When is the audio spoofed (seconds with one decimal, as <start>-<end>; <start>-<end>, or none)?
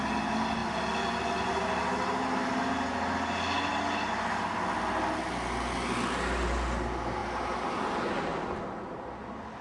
none